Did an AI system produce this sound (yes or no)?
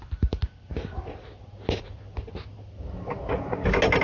no